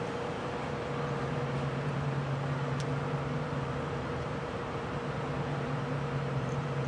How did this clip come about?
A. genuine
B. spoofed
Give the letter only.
B